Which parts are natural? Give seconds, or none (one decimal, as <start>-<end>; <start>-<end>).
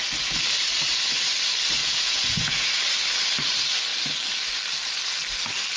0.0-1.8; 2.7-5.8